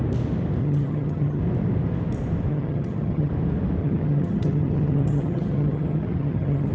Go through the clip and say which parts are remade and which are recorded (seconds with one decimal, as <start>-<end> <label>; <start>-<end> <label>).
0.0-0.6 recorded; 0.6-1.4 remade; 1.4-2.5 recorded; 2.5-3.3 remade; 3.3-3.8 recorded; 3.8-6.7 remade